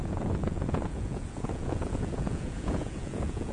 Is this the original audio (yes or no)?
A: no